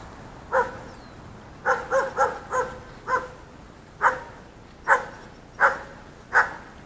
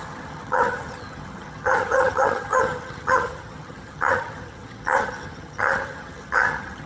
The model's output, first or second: second